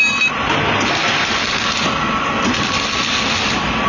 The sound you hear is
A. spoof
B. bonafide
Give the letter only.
B